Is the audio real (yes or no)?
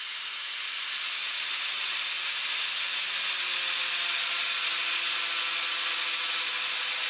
yes